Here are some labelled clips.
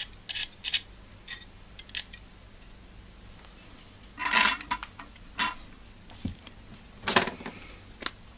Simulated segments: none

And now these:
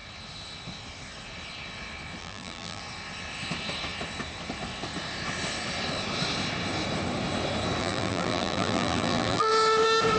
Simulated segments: 2.2-2.8; 7.8-9.5